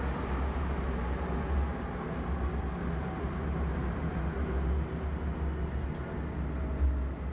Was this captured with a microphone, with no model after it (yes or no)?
yes